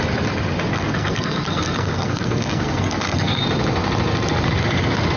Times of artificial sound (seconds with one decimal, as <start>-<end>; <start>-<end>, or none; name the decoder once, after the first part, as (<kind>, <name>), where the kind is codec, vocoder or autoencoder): 0.7-3.4 (codec, SNAC)